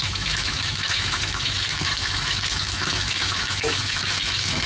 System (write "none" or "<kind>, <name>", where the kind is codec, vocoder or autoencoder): autoencoder, DAC-VAE